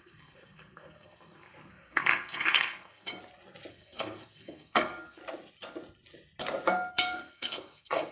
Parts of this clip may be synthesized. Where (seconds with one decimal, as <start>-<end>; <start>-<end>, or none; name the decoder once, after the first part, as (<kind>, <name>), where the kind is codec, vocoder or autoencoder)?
0.0-3.1 (codec, SNAC); 3.7-5.2; 6.9-8.1